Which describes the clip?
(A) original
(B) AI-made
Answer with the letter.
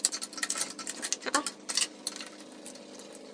A